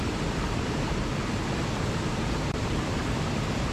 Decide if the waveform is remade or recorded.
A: recorded